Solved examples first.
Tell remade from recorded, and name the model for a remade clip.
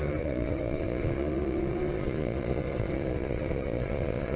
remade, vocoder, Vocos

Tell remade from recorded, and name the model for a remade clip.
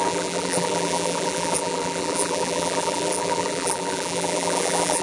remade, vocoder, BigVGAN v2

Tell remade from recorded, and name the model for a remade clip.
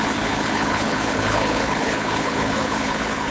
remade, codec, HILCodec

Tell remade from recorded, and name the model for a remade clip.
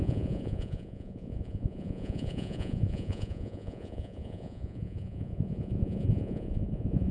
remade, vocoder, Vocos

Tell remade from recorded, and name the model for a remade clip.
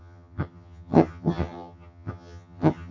remade, vocoder, HiFi-GAN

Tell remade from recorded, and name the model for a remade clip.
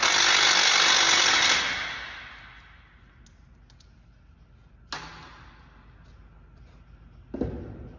recorded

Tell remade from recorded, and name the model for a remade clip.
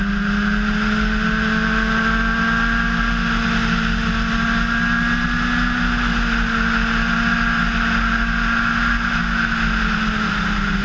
recorded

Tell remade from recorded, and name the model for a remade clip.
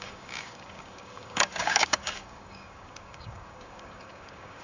remade, codec, DAC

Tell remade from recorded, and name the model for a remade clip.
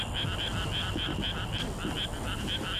recorded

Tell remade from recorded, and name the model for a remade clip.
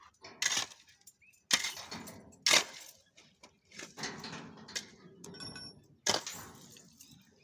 recorded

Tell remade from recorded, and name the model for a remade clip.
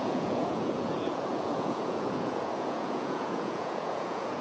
remade, vocoder, Vocos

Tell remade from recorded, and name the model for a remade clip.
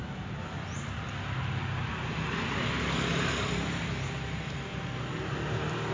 recorded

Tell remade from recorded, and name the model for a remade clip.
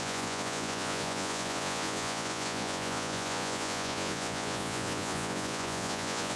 remade, vocoder, Vocos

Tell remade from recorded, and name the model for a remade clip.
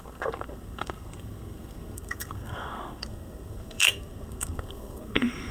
remade, codec, SNAC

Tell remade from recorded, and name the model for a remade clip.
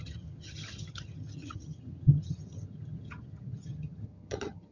remade, vocoder, HiFi-GAN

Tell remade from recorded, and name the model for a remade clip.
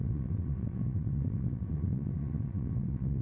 remade, vocoder, WaveNeXt